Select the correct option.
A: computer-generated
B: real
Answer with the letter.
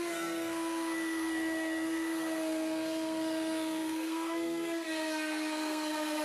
A